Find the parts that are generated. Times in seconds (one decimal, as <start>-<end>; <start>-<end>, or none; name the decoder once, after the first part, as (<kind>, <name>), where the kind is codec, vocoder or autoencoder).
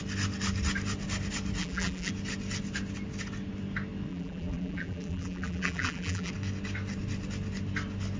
1.6-2.1 (vocoder, BigVGAN v2); 4.1-6.3